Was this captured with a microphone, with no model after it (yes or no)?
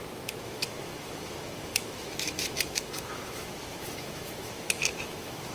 no